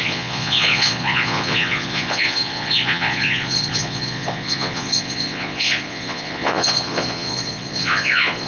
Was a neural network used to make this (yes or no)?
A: yes